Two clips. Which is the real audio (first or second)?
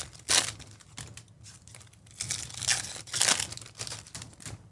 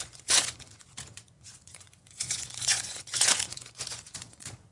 first